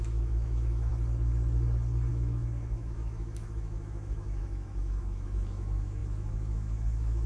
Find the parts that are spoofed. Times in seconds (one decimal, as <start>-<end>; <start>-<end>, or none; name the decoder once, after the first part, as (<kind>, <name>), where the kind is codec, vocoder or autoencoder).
0.0-0.9 (autoencoder, DAC-VAE); 2.1-7.3